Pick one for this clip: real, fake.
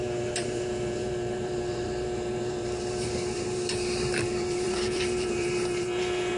fake